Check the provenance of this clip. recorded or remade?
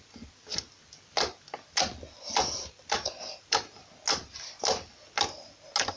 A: recorded